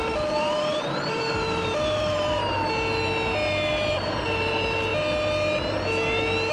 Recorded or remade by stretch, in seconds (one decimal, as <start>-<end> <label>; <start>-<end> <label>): 0.0-2.4 remade; 2.4-3.9 recorded; 3.9-4.9 remade; 4.9-6.5 recorded